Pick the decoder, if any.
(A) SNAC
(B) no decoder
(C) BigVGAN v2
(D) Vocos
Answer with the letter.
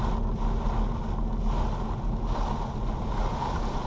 B